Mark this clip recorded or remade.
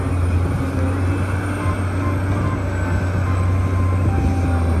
recorded